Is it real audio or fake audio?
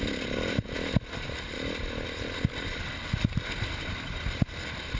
real